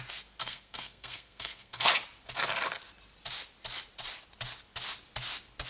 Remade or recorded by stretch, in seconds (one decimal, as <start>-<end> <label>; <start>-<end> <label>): 0.0-0.4 recorded; 0.4-1.9 remade; 1.9-5.7 recorded